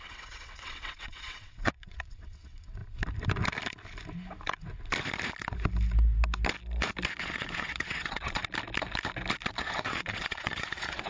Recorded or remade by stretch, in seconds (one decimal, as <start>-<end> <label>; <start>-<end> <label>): 0.0-2.8 remade; 2.8-7.2 recorded; 7.2-8.4 remade; 8.4-9.6 recorded; 9.6-11.1 remade

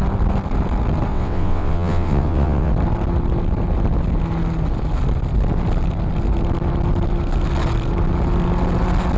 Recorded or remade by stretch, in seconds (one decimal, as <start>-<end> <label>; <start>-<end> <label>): 0.0-1.1 recorded; 1.1-2.7 remade; 2.7-9.2 recorded

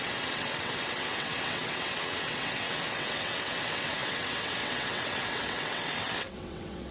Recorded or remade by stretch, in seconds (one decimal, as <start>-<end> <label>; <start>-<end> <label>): 0.0-6.9 remade

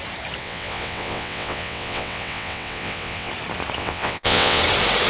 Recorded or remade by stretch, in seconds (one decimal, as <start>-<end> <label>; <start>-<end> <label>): 0.0-0.4 recorded; 0.4-3.3 remade; 3.3-3.8 recorded; 3.8-4.6 remade; 4.6-5.1 recorded

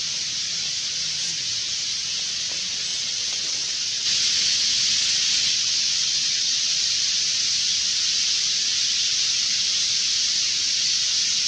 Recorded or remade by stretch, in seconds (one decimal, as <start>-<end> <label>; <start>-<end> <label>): 0.0-2.9 recorded; 2.9-6.8 remade; 6.8-11.5 recorded

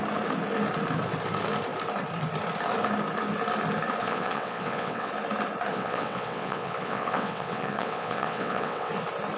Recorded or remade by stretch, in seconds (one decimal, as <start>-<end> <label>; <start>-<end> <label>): 0.0-4.0 recorded; 4.0-5.1 remade; 5.1-5.7 recorded; 5.7-8.9 remade; 8.9-9.4 recorded

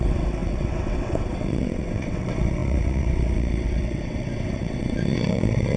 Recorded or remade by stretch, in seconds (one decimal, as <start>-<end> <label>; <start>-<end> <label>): 0.0-5.8 remade

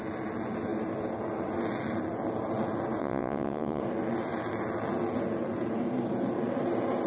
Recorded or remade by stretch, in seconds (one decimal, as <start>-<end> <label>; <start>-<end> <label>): 0.0-3.0 recorded; 3.0-3.8 remade; 3.8-7.1 recorded